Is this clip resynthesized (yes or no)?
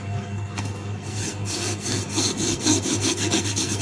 yes